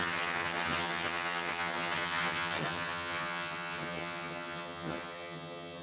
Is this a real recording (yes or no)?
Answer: no